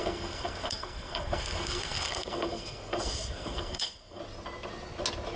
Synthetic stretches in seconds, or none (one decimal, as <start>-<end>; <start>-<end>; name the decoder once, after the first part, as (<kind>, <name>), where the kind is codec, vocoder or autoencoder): 0.0-4.2 (codec, SNAC)